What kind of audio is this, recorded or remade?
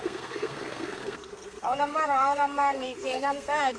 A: remade